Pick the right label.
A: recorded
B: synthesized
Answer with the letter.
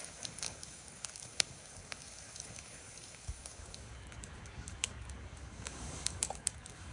B